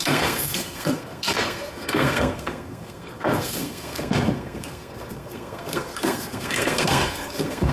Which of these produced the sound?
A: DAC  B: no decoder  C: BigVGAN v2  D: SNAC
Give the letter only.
D